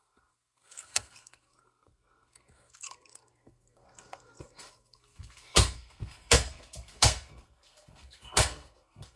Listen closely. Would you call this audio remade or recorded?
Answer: remade